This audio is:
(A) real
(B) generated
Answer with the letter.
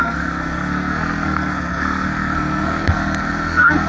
B